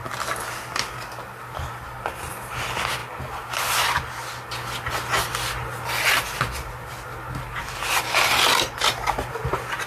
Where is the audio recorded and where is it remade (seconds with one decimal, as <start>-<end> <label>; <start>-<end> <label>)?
0.0-9.9 recorded